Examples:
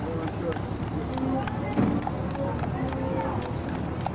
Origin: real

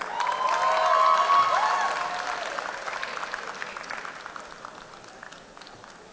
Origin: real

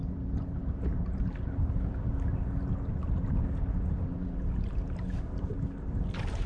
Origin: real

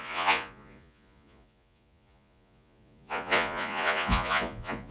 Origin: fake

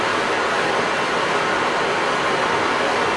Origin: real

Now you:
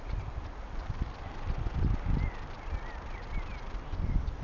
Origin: real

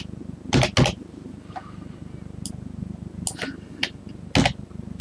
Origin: real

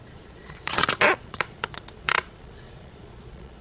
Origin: fake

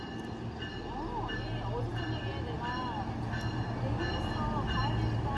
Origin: real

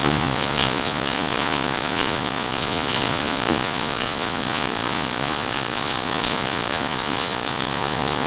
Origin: fake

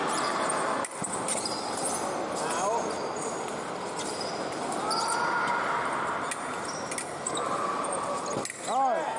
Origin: real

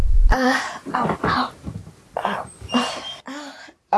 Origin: real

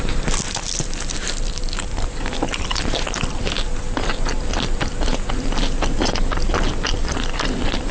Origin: real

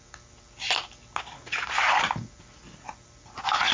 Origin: real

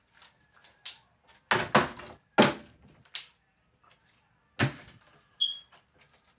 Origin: real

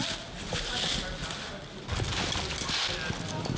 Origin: real